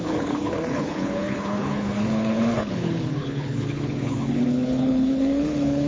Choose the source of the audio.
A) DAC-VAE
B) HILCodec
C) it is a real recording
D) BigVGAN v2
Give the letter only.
B